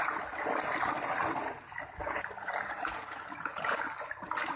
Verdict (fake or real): real